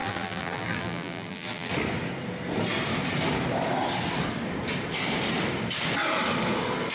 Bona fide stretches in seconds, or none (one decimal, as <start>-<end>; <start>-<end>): 1.7-6.9